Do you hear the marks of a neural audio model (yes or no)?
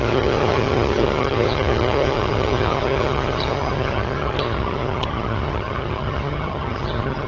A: yes